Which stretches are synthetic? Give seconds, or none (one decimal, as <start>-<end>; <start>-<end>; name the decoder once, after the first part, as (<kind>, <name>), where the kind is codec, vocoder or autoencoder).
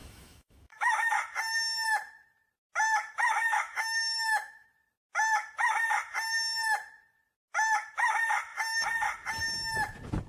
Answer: 0.0-1.1 (autoencoder, DAC-VAE); 3.4-4.7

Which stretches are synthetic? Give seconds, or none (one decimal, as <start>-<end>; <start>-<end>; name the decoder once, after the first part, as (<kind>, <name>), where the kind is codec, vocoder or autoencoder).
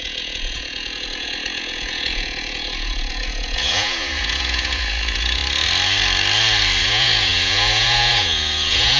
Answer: 0.0-5.4 (vocoder, Vocos); 6.8-9.0